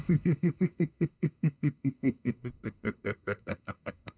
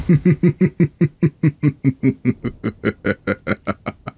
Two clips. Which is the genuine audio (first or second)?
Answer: second